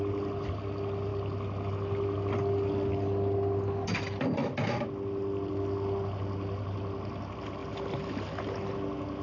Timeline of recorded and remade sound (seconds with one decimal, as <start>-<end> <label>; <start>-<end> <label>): 0.0-9.2 recorded